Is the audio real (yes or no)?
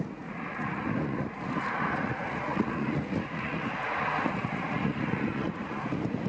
no